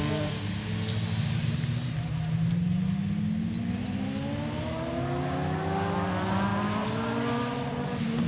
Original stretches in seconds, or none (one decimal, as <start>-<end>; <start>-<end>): 0.0-8.3